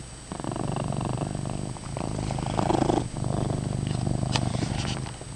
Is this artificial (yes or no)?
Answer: no